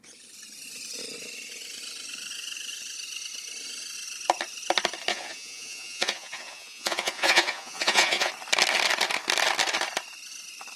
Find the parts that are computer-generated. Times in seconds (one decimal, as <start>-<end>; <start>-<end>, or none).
5.1-8.3